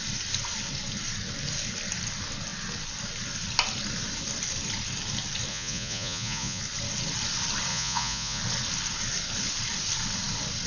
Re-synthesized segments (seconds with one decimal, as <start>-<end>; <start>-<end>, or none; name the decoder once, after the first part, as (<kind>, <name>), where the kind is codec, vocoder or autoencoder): 5.5-6.6 (vocoder, Vocos); 7.7-8.4